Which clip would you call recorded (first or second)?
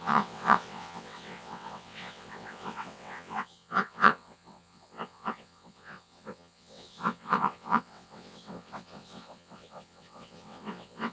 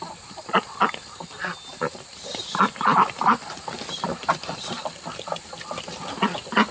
second